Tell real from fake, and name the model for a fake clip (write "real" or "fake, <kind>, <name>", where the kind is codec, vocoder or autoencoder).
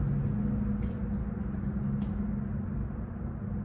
real